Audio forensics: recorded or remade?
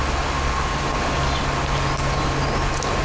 recorded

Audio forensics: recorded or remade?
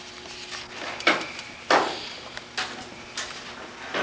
recorded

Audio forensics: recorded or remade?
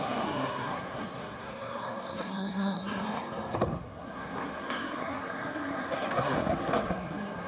remade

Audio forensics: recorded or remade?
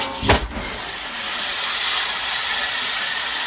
recorded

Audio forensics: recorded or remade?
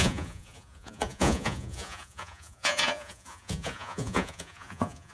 remade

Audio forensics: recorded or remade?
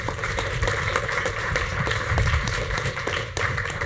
remade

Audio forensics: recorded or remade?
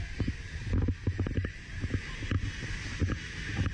recorded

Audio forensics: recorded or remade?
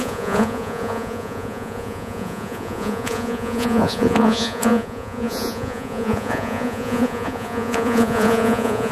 remade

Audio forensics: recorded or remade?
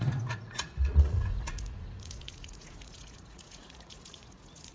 remade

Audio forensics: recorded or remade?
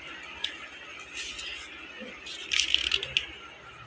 recorded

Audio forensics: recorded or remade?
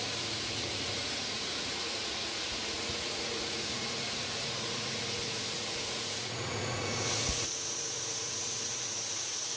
remade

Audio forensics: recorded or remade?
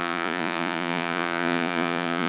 remade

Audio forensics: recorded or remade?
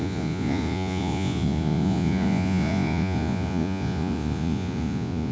remade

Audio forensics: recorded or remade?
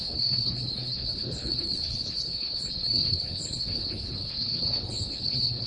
remade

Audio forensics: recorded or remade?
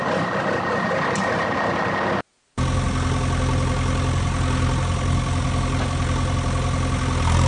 recorded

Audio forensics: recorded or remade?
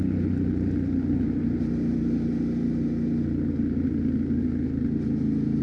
recorded